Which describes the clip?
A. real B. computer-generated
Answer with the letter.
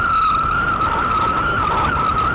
A